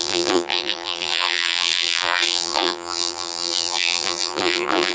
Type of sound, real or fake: fake